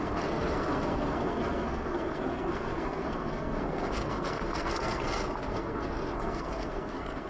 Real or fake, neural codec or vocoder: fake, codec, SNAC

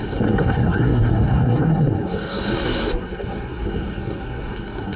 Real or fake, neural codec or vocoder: fake, codec, SNAC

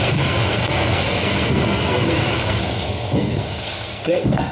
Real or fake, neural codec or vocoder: fake, codec, SNAC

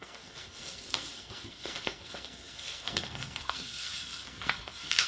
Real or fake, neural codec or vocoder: fake, codec, SNAC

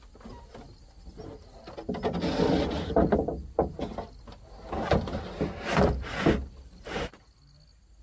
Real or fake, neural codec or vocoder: real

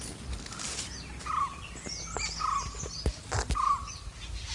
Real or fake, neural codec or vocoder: real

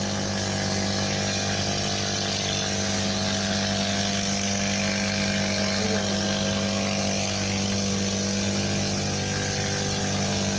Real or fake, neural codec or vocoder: real